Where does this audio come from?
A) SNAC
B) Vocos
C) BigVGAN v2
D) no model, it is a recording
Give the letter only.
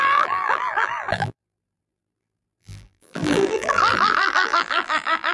C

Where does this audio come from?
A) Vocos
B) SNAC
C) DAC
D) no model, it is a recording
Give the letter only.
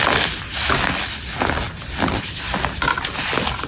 D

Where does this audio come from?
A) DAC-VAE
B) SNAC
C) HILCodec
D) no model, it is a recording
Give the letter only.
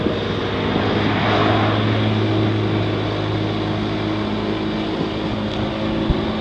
D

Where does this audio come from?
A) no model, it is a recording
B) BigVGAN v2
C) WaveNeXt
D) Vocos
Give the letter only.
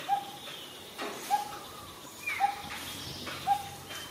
B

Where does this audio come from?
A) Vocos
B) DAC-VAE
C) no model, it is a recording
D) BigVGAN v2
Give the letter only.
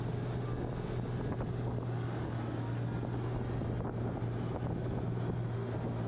C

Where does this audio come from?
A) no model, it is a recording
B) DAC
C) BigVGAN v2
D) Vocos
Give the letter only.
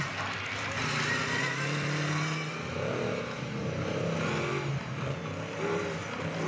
A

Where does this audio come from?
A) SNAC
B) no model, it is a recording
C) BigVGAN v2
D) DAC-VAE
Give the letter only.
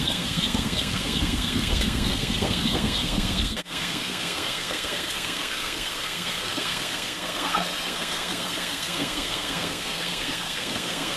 A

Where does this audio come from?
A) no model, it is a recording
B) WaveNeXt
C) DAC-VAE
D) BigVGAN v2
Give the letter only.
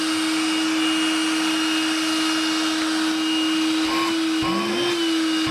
A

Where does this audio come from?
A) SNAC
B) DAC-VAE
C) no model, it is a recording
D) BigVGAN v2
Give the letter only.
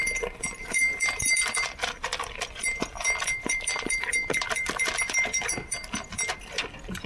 D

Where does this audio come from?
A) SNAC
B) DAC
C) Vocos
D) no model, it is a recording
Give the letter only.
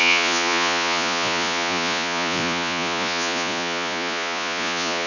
C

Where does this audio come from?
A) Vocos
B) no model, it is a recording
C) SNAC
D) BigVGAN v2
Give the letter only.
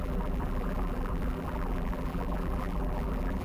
D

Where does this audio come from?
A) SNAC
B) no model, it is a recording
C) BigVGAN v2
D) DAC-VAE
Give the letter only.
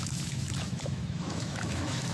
D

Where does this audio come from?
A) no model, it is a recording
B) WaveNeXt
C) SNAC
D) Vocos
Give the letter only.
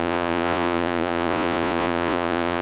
D